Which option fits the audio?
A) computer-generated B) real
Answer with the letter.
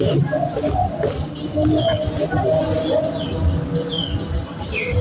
B